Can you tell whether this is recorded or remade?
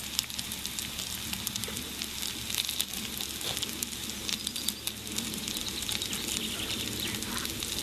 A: recorded